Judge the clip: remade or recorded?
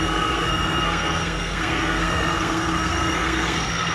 remade